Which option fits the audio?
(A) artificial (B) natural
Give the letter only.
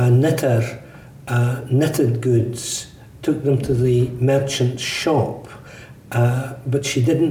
B